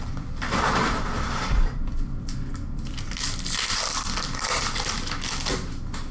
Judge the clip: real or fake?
fake